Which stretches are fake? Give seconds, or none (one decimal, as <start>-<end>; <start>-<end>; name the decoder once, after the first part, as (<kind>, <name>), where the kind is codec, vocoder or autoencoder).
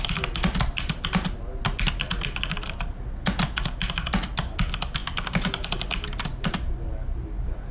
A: none